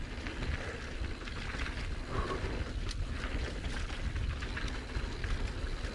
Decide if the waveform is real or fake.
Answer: real